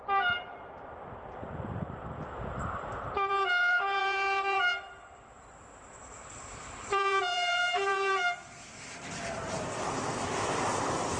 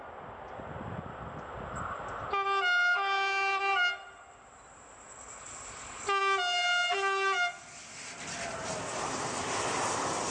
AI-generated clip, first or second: first